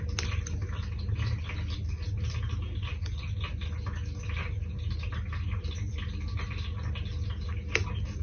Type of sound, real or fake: real